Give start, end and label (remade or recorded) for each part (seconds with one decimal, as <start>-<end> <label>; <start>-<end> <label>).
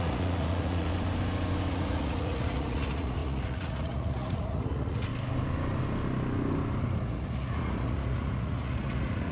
0.0-0.9 remade; 0.9-1.7 recorded; 1.7-5.1 remade; 5.1-7.0 recorded; 7.0-9.3 remade